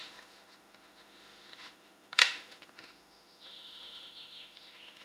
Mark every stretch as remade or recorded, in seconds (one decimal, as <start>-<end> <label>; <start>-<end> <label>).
0.0-5.0 remade

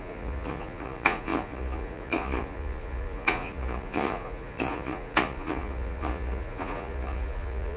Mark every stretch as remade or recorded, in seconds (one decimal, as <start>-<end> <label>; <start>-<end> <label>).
0.0-7.8 remade

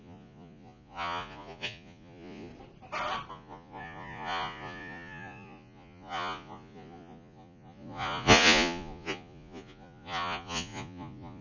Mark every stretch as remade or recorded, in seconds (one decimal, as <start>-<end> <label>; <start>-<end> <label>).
0.0-2.5 remade; 2.5-3.3 recorded; 3.3-11.4 remade

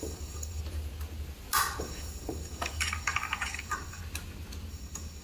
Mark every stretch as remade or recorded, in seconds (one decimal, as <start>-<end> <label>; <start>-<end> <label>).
0.0-0.6 remade; 0.6-1.8 recorded; 1.8-4.0 remade; 4.0-4.7 recorded; 4.7-5.2 remade

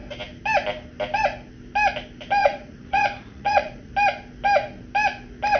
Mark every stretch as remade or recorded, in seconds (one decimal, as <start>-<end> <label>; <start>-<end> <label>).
0.0-2.4 recorded; 2.4-3.9 remade; 3.9-5.6 recorded

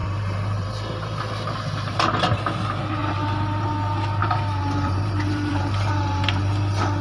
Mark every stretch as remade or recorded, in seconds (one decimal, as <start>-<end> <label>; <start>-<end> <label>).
0.0-1.2 remade; 1.2-3.0 recorded; 3.0-3.7 remade; 3.7-4.2 recorded; 4.2-6.3 remade; 6.3-7.0 recorded